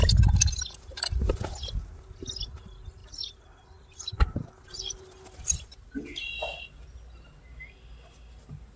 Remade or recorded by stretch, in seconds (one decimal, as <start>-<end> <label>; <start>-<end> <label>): 0.0-3.0 recorded; 3.0-4.6 remade; 4.6-8.8 recorded